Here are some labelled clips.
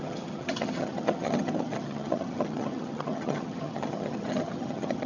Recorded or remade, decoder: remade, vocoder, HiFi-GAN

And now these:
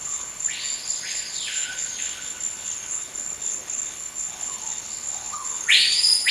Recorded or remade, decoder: remade, codec, HILCodec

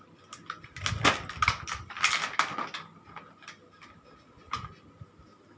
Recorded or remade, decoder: recorded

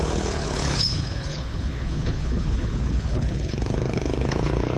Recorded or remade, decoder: remade, codec, HILCodec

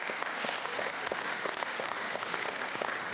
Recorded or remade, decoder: remade, autoencoder, DAC-VAE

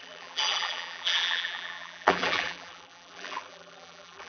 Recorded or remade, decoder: remade, vocoder, BigVGAN v2